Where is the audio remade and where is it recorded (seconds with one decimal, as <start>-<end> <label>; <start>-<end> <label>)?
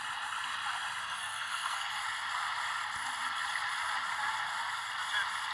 0.0-1.0 recorded; 1.0-1.9 remade; 1.9-5.5 recorded